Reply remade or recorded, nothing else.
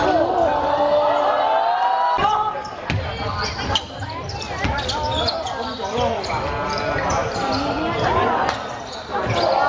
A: recorded